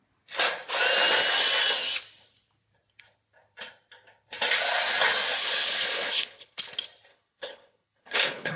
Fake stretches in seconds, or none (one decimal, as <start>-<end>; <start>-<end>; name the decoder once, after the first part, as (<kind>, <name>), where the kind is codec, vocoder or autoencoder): 5.4-6.6 (codec, HILCodec); 7.1-8.6